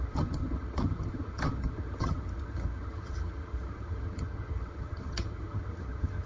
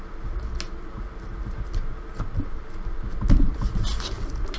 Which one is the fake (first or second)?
first